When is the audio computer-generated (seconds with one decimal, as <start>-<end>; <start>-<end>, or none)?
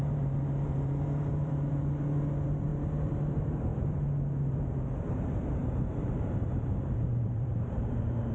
0.0-3.7; 4.5-5.6; 6.1-8.3